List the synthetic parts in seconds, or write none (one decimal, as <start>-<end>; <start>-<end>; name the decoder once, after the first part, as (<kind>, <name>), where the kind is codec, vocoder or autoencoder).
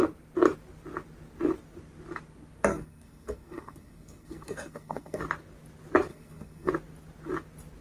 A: 2.7-5.2 (codec, SNAC); 6.1-6.7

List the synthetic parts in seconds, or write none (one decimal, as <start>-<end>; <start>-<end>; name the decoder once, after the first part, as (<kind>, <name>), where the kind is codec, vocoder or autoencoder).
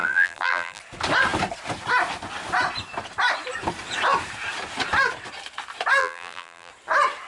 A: 0.0-0.8 (vocoder, BigVGAN v2); 6.0-6.7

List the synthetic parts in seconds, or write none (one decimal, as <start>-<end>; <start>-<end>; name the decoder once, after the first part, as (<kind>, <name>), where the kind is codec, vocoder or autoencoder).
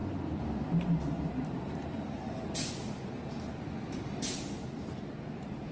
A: 0.0-5.7 (vocoder, BigVGAN v2)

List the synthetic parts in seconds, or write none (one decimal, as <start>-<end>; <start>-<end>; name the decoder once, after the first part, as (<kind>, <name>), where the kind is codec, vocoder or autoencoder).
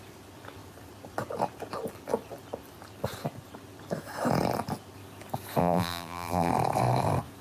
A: 5.6-6.5 (vocoder, BigVGAN v2)